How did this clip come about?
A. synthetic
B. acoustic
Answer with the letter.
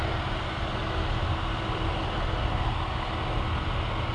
B